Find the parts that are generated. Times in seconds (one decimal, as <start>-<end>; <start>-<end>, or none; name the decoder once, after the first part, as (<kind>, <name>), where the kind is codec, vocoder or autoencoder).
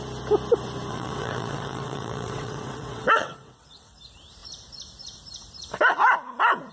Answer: 0.9-3.9 (vocoder, WaveNeXt)